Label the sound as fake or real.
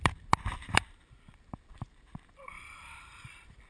fake